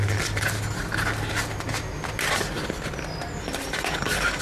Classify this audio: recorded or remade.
recorded